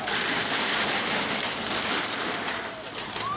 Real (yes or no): yes